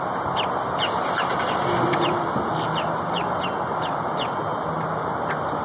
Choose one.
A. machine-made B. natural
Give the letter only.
B